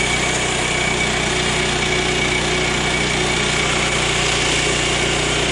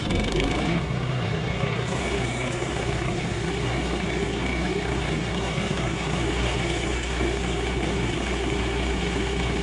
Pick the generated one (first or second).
second